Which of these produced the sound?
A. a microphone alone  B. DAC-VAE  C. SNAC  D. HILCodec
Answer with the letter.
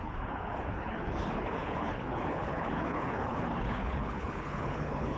D